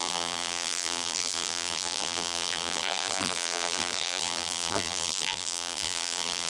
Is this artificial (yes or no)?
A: yes